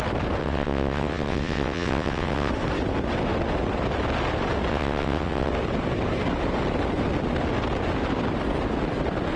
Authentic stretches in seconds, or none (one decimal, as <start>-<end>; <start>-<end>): 0.0-0.4; 2.5-4.7; 5.5-9.4